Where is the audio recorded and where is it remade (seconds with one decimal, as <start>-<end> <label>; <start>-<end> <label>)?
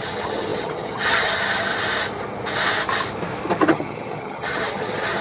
0.0-1.7 remade; 1.7-3.7 recorded; 3.7-5.2 remade